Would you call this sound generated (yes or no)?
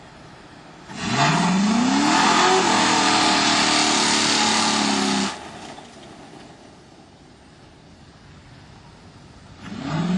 no